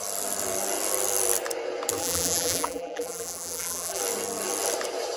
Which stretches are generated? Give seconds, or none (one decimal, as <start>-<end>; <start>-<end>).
2.0-4.0